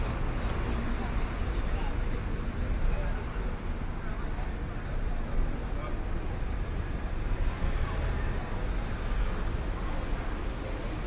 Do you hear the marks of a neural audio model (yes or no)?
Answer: no